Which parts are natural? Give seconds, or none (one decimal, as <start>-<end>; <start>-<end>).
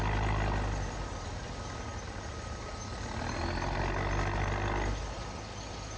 0.0-1.9; 2.9-6.0